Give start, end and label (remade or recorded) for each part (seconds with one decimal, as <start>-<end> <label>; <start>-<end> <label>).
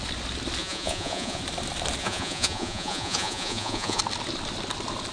0.0-0.6 recorded; 0.6-1.4 remade; 1.4-2.0 recorded; 2.0-4.0 remade; 4.0-5.1 recorded